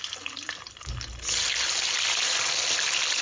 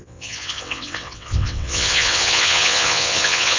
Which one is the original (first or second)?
first